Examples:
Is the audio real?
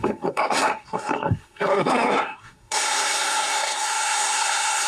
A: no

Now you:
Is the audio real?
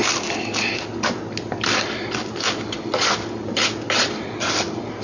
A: yes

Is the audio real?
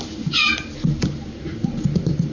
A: yes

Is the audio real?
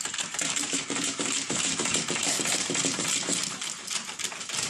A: no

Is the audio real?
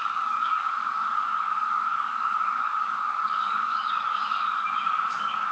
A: no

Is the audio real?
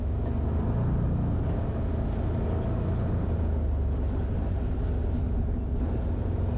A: yes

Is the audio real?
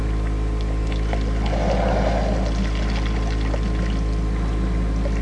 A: yes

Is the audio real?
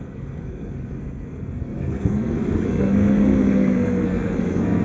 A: no